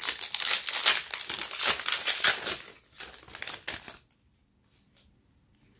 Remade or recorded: recorded